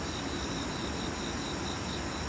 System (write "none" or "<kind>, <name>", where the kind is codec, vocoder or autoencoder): none